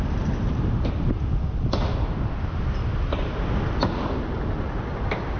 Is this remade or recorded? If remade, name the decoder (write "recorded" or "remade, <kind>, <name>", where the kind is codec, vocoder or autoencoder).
recorded